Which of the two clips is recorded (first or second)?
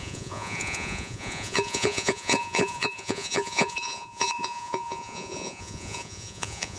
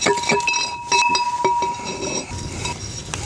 second